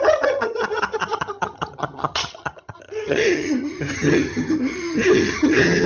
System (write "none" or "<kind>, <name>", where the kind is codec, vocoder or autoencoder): vocoder, HiFi-GAN